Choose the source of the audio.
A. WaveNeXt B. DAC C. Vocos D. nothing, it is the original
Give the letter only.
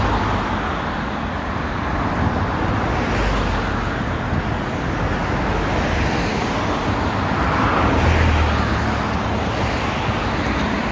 D